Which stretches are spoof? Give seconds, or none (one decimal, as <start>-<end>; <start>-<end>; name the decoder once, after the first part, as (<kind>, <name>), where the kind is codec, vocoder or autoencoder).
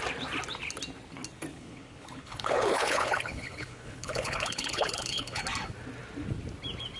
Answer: 1.5-5.4 (codec, HILCodec)